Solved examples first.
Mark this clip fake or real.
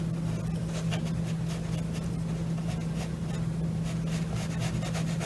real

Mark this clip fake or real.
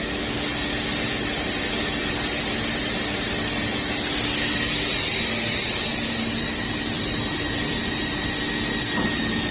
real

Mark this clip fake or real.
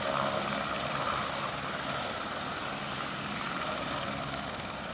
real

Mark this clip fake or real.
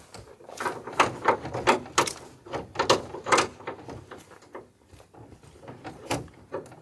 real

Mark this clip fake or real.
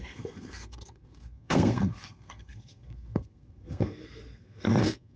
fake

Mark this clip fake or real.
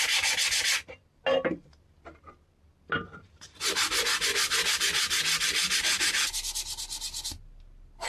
real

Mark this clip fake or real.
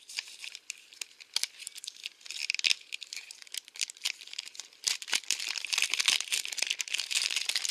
fake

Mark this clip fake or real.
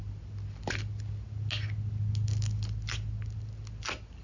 real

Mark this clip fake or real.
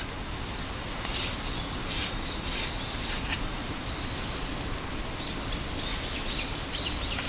real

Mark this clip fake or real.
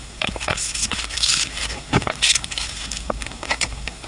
fake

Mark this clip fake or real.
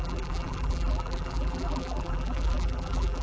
fake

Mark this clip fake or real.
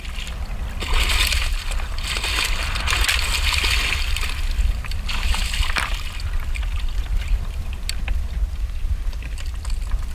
real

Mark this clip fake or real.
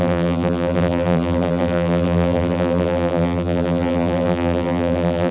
fake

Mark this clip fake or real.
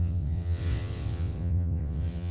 fake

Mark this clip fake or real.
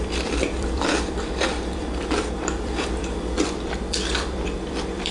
fake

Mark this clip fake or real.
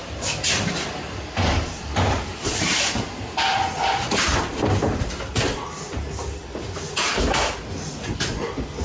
real